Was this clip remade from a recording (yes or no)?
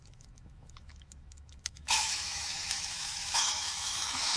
yes